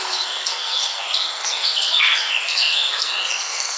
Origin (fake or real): fake